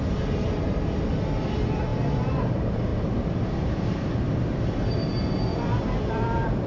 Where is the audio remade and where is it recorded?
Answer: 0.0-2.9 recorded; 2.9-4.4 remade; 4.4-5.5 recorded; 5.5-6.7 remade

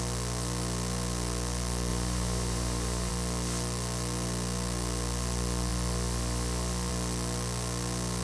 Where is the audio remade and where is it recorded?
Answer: 0.0-1.9 recorded; 1.9-3.1 remade; 3.1-8.2 recorded

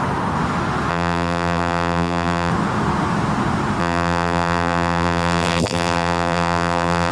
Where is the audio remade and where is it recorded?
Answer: 0.0-0.9 recorded; 0.9-2.5 remade; 2.5-3.8 recorded; 3.8-7.1 remade

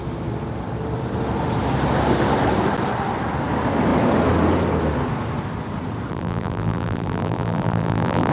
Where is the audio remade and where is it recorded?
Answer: 0.0-6.1 recorded; 6.1-8.3 remade

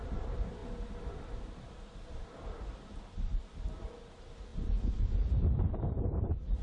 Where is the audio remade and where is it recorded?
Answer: 0.0-0.6 remade; 0.6-1.6 recorded; 1.6-6.6 remade

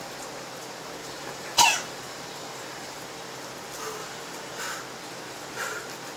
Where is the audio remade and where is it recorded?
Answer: 0.0-1.0 recorded; 1.0-3.0 remade; 3.0-4.0 recorded; 4.0-4.6 remade; 4.6-6.2 recorded